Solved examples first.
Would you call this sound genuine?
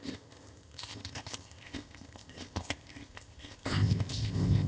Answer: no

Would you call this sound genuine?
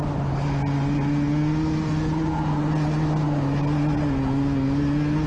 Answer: yes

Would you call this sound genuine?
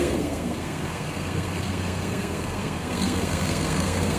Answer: no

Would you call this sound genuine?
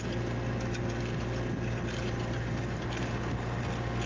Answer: yes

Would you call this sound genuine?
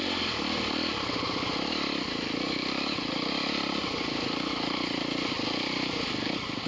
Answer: yes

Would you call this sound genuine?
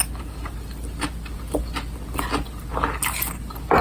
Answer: yes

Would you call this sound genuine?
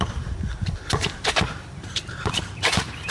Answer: no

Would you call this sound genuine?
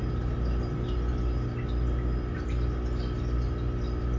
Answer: yes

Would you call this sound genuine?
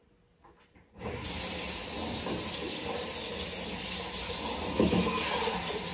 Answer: yes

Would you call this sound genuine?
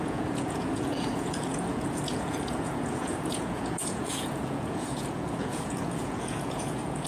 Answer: no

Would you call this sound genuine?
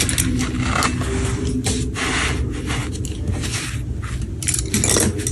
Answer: yes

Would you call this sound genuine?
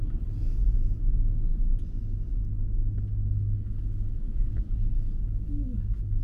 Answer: yes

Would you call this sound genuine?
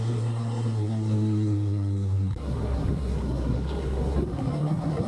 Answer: no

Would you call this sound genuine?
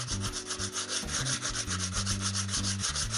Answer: yes